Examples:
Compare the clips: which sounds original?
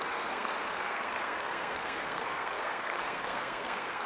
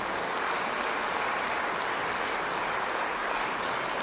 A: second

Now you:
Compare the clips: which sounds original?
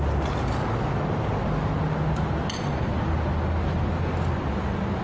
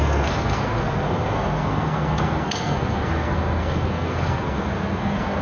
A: first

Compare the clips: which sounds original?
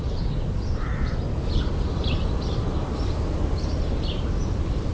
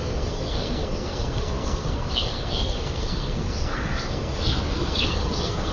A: first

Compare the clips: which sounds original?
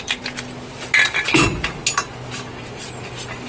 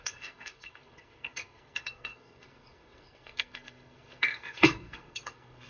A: first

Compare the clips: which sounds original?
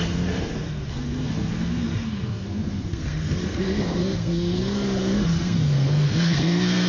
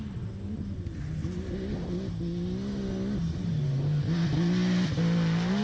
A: second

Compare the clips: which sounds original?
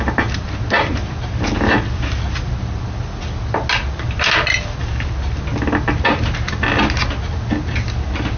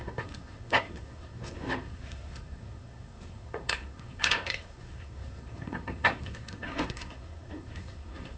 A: first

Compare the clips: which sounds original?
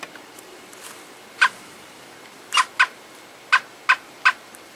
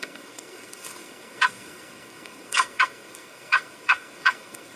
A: first